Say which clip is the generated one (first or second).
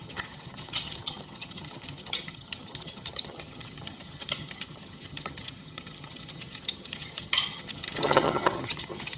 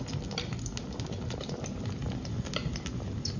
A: first